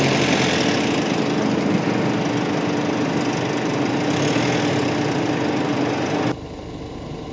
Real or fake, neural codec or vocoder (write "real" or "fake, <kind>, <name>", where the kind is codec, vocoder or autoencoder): real